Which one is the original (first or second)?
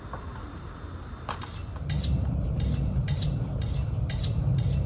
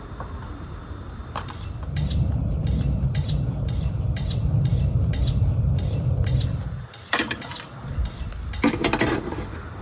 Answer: first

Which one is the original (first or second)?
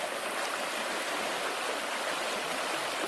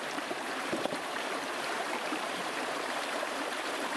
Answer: first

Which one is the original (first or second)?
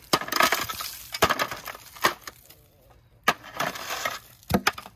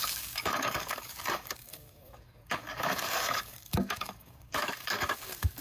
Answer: first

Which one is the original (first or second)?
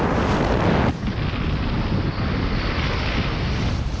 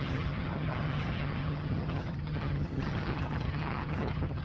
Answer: first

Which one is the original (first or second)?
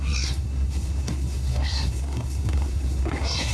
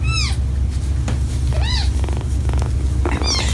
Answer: second